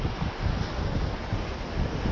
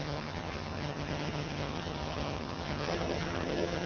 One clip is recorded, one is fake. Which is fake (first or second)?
second